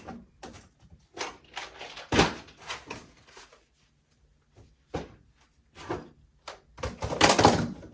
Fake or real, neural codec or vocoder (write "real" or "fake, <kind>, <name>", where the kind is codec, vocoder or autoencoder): real